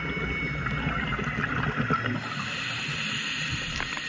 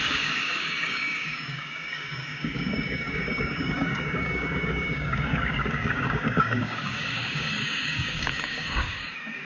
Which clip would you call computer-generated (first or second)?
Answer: second